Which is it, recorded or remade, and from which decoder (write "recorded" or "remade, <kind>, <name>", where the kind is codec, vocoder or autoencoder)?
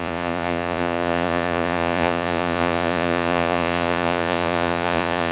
remade, vocoder, Vocos